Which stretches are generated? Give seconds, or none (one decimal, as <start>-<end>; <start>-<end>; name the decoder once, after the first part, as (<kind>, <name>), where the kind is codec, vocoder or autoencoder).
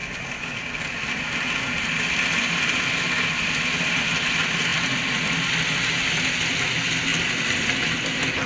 none